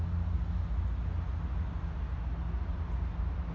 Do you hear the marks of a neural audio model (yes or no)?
no